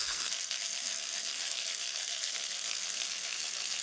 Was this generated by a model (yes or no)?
yes